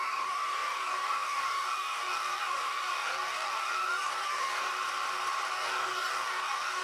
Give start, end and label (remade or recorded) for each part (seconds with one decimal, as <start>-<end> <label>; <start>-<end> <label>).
0.0-4.7 remade; 4.7-5.5 recorded; 5.5-6.8 remade